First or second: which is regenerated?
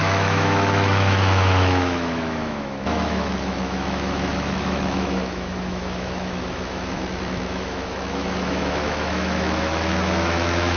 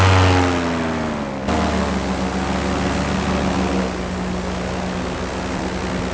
first